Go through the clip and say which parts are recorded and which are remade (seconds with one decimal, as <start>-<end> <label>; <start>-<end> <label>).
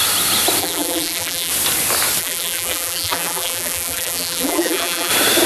0.0-0.6 recorded; 0.6-1.5 remade; 1.5-2.2 recorded; 2.2-5.1 remade; 5.1-5.5 recorded